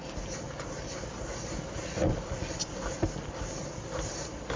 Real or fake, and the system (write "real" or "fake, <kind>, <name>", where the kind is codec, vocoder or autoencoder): real